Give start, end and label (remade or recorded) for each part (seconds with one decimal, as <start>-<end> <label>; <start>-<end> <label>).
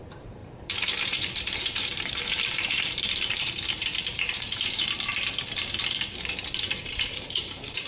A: 0.0-5.1 remade; 5.1-6.8 recorded; 6.8-7.9 remade